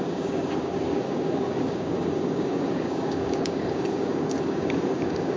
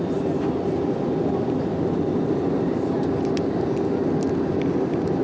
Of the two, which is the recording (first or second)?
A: second